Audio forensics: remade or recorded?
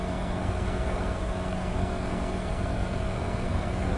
remade